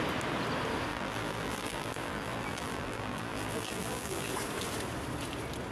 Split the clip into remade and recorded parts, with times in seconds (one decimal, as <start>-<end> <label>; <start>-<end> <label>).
0.0-0.9 recorded; 0.9-4.3 remade; 4.3-5.7 recorded